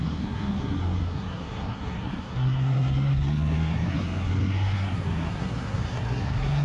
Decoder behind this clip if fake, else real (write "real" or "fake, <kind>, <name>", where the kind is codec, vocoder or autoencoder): fake, codec, SNAC